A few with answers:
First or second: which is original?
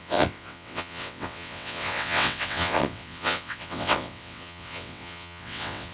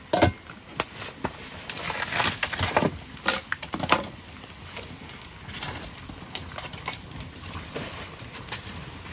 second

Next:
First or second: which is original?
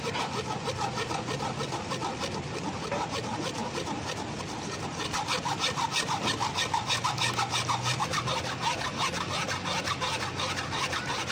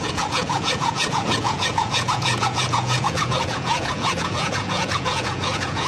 first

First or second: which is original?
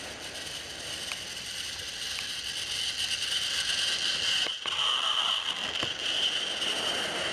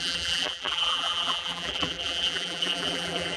first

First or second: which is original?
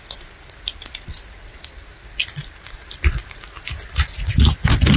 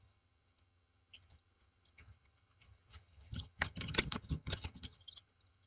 first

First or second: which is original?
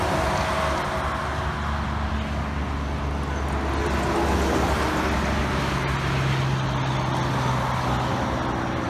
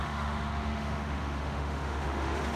first